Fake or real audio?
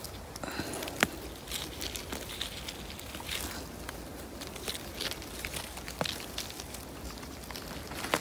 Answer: real